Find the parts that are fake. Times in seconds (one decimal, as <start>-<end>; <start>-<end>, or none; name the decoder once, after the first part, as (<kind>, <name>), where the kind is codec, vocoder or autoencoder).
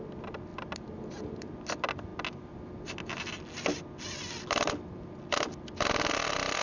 none